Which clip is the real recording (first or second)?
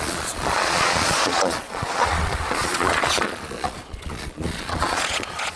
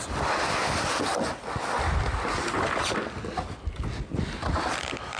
second